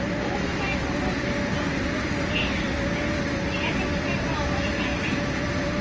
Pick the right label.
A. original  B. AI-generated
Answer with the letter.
A